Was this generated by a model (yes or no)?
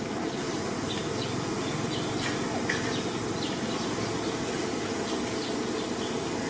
no